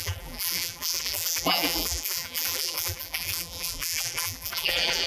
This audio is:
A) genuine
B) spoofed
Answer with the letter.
B